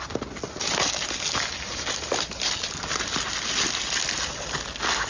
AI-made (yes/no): no